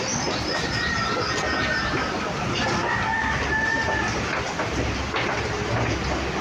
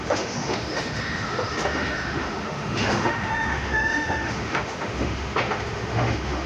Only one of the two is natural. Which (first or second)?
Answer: first